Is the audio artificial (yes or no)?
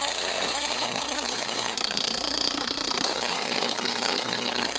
yes